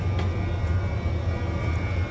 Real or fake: real